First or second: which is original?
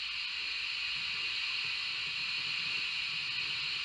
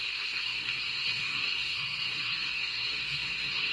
first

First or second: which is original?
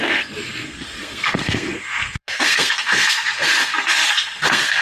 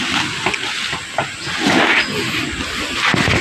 second